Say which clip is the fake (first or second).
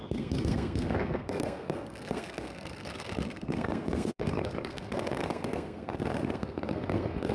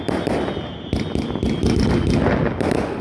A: first